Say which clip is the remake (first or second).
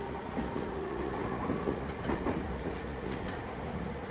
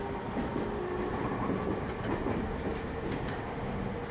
first